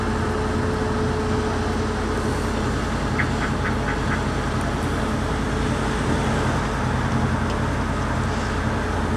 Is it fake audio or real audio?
real